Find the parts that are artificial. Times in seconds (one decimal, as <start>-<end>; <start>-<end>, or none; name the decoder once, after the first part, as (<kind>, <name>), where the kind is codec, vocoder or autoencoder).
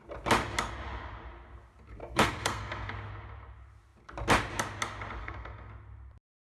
2.0-2.9 (codec, SNAC); 5.2-5.7